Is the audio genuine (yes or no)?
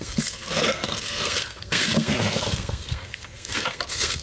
no